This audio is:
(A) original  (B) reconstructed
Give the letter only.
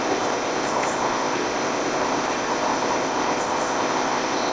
B